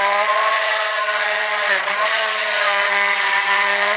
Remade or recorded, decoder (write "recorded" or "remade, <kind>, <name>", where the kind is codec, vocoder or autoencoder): remade, vocoder, Vocos